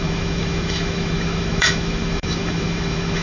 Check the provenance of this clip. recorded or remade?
remade